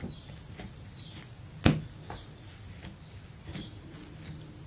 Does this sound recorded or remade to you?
recorded